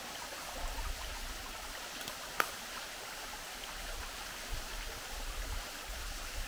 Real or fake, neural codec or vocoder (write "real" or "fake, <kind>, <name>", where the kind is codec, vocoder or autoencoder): real